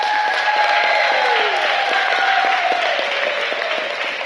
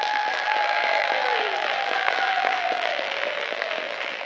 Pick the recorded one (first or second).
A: first